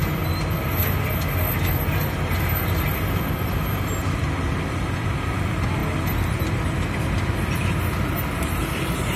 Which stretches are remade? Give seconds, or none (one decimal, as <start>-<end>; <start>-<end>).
none